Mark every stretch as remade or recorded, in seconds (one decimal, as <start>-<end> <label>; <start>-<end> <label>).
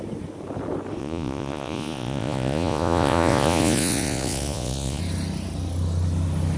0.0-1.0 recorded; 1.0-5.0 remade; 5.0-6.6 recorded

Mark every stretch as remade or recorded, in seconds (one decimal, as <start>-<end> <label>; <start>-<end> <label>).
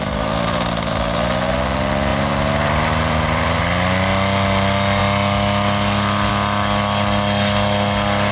0.0-2.1 recorded; 2.1-3.6 remade; 3.6-8.3 recorded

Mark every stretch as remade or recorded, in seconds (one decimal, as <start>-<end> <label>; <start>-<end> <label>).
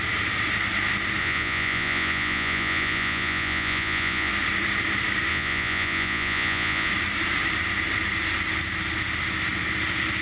0.0-1.2 recorded; 1.2-4.3 remade; 4.3-5.3 recorded; 5.3-6.9 remade; 6.9-10.2 recorded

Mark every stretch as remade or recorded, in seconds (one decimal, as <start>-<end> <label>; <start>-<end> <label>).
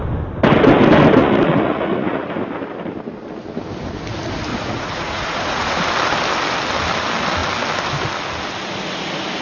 0.0-1.2 recorded; 1.2-2.3 remade; 2.3-4.5 recorded; 4.5-5.8 remade; 5.8-9.4 recorded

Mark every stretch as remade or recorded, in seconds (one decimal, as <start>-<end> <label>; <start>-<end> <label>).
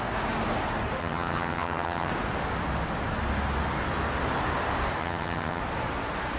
0.0-1.0 recorded; 1.0-2.1 remade; 2.1-5.0 recorded; 5.0-5.6 remade; 5.6-6.4 recorded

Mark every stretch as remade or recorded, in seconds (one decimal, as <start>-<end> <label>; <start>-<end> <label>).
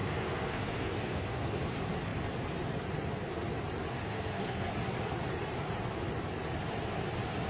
0.0-1.6 remade; 1.6-3.9 recorded; 3.9-4.7 remade; 4.7-7.5 recorded